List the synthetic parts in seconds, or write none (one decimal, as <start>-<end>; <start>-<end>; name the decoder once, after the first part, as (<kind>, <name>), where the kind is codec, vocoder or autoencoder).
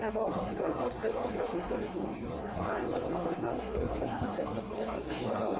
0.0-5.6 (codec, SNAC)